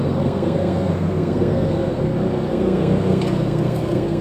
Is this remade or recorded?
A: remade